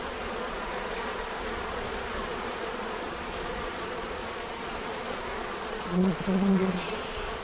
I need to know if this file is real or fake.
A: fake